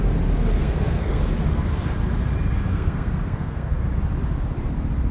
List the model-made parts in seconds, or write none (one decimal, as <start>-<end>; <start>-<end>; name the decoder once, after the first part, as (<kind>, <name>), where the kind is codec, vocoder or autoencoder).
0.6-1.2 (codec, SNAC); 2.7-3.8